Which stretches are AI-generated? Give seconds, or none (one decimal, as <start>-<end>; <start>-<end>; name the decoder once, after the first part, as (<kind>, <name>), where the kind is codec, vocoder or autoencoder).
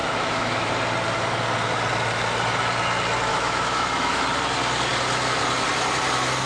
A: 0.0-0.7 (autoencoder, DAC-VAE); 3.3-4.2